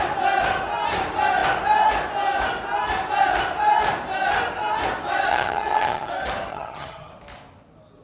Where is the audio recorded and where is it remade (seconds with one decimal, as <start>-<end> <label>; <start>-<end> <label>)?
0.0-5.3 recorded; 5.3-6.1 remade; 6.1-6.5 recorded; 6.5-7.1 remade; 7.1-8.0 recorded